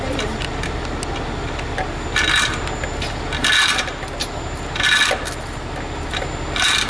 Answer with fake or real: real